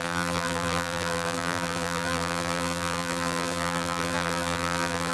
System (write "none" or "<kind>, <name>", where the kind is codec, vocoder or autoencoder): vocoder, BigVGAN v2